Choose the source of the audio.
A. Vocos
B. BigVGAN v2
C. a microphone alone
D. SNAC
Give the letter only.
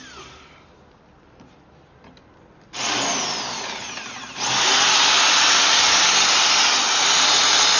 C